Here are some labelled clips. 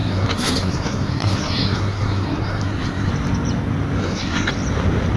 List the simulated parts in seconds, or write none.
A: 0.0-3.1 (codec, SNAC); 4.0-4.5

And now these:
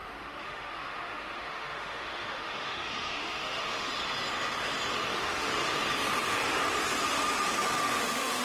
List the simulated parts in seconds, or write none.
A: 0.0-3.9 (autoencoder, DAC-VAE); 5.1-5.5; 8.0-8.4

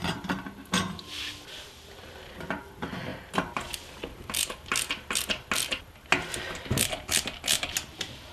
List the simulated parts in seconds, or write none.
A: none

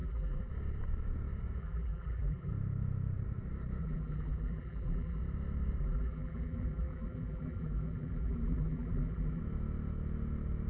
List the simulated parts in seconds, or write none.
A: 0.0-0.5 (vocoder, BigVGAN v2); 1.6-2.5; 3.8-5.2; 5.8-9.4

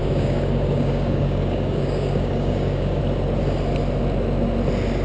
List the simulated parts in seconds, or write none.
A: 0.0-3.0 (codec, DAC)

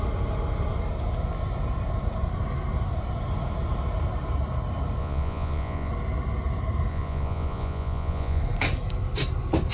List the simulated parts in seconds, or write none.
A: 5.0-5.9 (vocoder, Vocos); 6.9-8.4

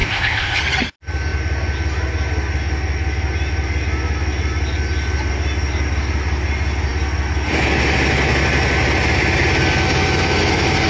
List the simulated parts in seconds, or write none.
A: 0.0-0.6 (codec, ZipCodec)

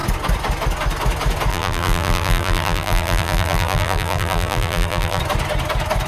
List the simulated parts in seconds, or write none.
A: 1.5-5.2 (vocoder, BigVGAN v2)